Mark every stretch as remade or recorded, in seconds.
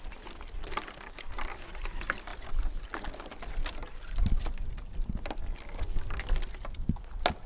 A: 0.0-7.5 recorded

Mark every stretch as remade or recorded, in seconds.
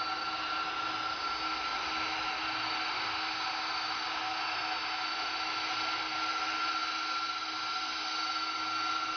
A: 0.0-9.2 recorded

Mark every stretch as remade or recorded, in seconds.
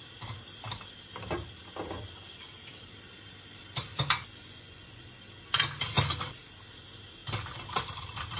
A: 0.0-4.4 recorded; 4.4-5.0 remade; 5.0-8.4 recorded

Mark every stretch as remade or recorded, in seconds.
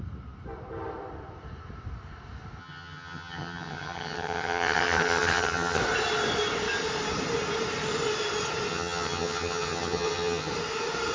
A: 0.0-2.6 recorded; 2.6-5.8 remade; 5.8-8.7 recorded; 8.7-10.5 remade; 10.5-11.1 recorded